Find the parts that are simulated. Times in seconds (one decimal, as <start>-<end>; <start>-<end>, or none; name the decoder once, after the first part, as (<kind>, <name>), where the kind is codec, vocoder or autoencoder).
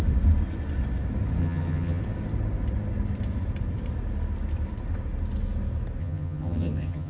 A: 1.4-2.0 (vocoder, HiFi-GAN); 6.0-7.1